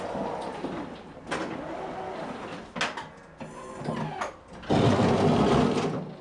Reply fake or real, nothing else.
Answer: real